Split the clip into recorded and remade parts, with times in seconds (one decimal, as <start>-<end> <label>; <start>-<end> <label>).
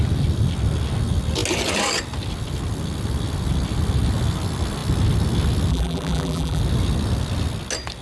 0.0-5.7 recorded; 5.7-6.6 remade; 6.6-8.0 recorded